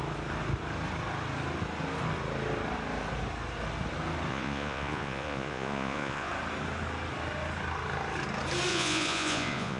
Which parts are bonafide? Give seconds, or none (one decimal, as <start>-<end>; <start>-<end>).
0.0-4.3; 6.3-8.7